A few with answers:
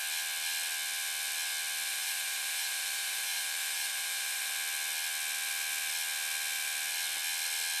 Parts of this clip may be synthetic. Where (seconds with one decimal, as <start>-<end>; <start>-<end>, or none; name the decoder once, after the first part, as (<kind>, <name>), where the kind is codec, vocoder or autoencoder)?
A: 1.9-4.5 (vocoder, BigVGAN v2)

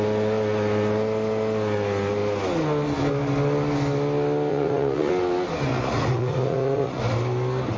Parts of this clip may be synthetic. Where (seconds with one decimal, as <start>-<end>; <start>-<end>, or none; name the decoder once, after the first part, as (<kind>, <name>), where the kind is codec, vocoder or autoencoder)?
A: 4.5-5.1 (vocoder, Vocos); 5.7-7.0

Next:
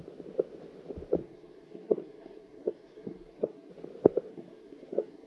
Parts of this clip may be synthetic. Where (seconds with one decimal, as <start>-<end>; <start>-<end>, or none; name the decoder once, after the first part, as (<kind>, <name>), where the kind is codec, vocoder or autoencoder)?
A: 1.2-3.7 (codec, SNAC); 4.3-5.3

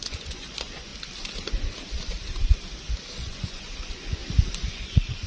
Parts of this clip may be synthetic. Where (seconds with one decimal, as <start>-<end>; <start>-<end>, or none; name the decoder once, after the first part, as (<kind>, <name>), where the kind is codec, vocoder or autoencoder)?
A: 0.0-0.9 (vocoder, Vocos); 3.1-4.2; 4.7-5.3

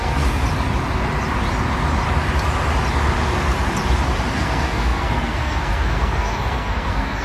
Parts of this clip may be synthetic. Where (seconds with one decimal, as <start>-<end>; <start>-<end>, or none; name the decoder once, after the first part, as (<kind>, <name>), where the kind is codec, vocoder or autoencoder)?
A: 0.0-0.4 (codec, SNAC); 4.4-7.2

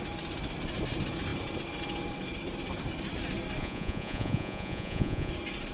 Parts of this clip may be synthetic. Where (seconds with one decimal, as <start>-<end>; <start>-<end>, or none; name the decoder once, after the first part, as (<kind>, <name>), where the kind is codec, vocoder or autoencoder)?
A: 3.6-5.3 (vocoder, Vocos)

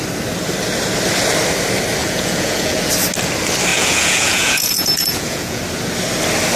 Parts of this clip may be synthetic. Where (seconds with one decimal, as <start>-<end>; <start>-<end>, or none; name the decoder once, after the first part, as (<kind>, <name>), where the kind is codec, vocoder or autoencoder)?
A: 2.0-2.9 (vocoder, Vocos); 3.7-5.6

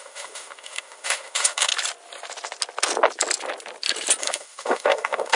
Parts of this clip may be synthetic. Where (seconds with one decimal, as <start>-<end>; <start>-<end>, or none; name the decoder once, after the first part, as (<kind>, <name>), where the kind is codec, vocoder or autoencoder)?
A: 0.0-1.7 (autoencoder, DAC-VAE); 4.2-5.4